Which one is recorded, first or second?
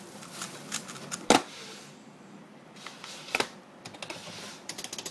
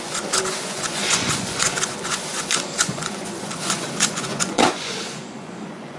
first